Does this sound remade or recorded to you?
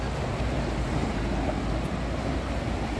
recorded